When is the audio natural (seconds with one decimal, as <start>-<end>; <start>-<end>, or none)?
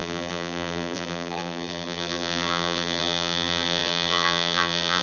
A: none